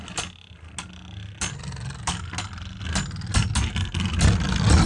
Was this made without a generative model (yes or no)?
yes